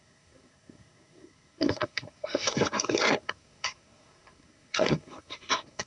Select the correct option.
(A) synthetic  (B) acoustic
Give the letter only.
A